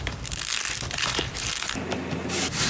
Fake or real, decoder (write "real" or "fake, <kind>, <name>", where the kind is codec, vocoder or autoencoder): real